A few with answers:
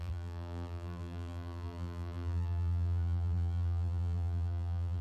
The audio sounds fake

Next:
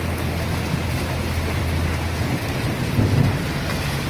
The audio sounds real